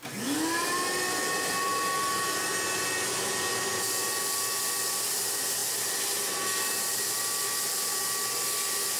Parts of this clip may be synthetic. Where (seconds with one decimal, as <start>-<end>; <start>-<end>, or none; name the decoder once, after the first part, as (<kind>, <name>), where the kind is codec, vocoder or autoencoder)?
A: none